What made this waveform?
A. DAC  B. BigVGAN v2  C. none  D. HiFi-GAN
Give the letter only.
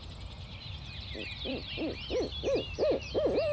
B